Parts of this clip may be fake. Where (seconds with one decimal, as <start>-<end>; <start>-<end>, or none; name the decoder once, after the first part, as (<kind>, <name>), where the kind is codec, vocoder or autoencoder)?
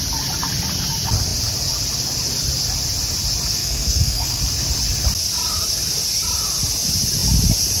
3.6-4.4 (codec, SNAC)